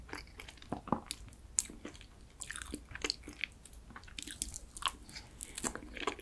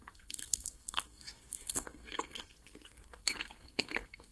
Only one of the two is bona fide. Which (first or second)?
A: first